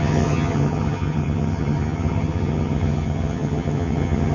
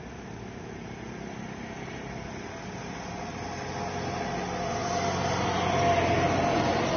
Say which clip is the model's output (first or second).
first